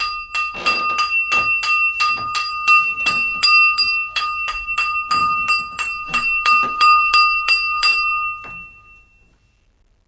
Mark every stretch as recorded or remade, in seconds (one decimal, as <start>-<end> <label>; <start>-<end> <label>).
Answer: 0.0-2.5 recorded; 2.5-4.5 remade; 4.5-5.2 recorded; 5.2-8.1 remade; 8.1-10.1 recorded